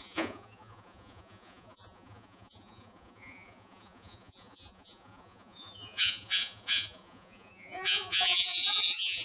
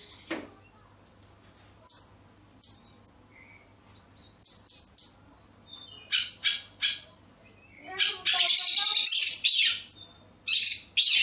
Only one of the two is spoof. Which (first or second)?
first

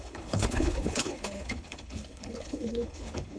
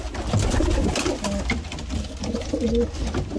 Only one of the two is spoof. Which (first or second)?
first